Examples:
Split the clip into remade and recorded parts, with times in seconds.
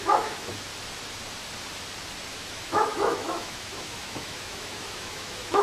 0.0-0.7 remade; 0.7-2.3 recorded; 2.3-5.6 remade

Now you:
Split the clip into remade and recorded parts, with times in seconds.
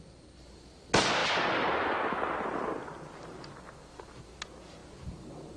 0.0-5.6 recorded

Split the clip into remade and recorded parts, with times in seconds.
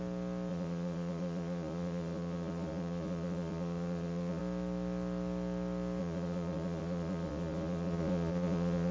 0.0-0.5 recorded; 0.5-4.4 remade; 4.4-6.0 recorded; 6.0-8.9 remade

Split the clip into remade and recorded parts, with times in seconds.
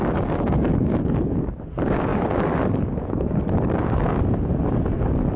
0.0-5.4 remade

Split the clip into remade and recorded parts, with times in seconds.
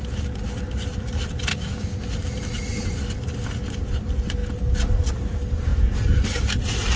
0.0-1.5 recorded; 1.5-2.0 remade; 2.0-7.0 recorded